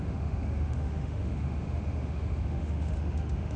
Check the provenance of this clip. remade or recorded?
remade